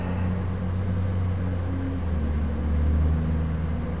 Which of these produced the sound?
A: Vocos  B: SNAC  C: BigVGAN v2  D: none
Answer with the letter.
D